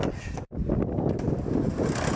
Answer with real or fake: real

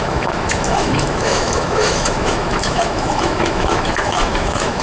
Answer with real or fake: fake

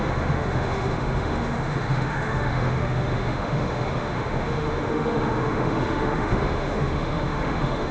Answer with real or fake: fake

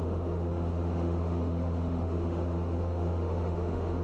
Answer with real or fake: fake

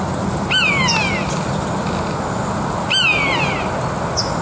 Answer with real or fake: real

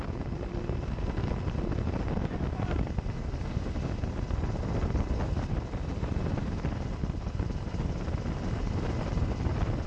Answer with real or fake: real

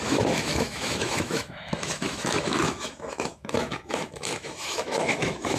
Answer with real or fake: fake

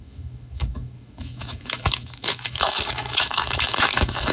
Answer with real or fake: fake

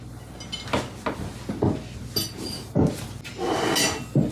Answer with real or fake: real